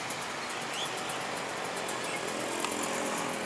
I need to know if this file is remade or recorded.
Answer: recorded